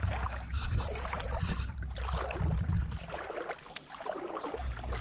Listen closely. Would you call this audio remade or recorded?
remade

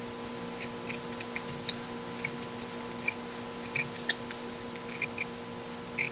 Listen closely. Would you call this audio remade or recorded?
recorded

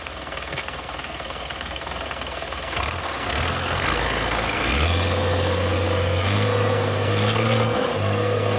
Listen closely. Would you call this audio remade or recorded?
remade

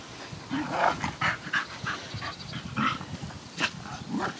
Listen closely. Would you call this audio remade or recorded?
recorded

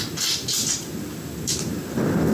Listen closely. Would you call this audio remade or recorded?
remade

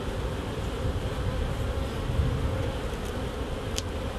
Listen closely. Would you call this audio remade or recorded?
recorded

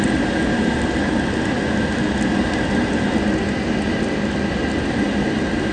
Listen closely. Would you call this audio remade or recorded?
recorded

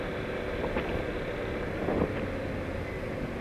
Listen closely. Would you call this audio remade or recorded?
recorded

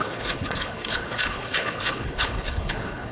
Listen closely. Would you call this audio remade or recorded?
remade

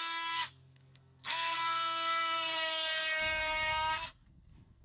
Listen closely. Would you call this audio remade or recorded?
remade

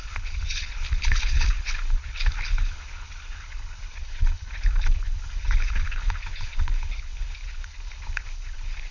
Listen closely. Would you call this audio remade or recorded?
remade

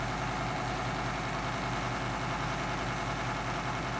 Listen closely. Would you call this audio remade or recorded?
recorded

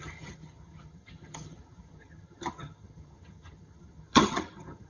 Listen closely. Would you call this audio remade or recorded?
remade